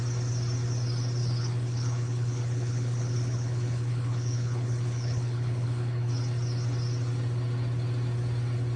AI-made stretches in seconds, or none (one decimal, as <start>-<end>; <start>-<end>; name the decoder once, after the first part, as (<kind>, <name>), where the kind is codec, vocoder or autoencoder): 1.2-6.1 (codec, HILCodec)

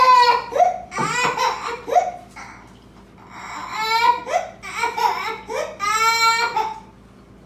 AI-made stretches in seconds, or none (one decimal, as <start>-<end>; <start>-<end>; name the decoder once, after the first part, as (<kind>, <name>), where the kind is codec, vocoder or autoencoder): none

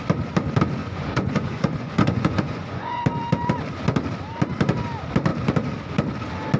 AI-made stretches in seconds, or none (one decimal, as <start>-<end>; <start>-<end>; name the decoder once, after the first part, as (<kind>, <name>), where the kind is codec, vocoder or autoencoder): 0.8-3.0 (vocoder, Vocos)

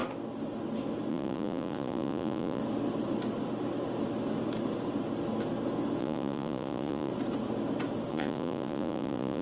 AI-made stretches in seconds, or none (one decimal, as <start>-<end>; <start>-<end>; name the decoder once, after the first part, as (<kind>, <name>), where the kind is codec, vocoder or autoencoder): 1.1-2.6 (vocoder, Vocos); 6.0-7.1; 8.1-9.4

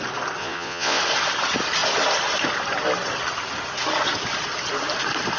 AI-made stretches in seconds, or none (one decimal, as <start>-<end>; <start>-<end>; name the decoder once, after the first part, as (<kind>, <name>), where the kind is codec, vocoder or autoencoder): 0.4-1.0 (vocoder, Vocos)